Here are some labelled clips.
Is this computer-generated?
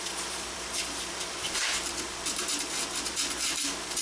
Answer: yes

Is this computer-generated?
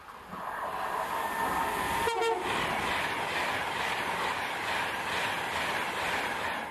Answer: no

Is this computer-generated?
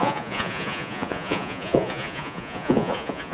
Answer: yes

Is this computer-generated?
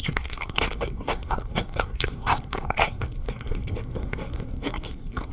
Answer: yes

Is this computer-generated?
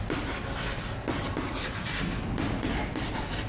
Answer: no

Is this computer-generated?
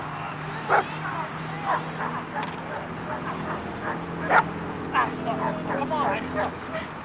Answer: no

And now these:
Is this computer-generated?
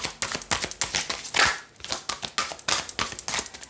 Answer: no